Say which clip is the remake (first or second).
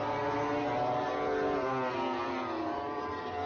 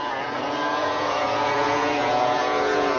second